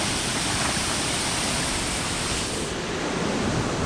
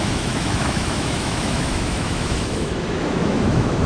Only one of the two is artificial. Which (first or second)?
second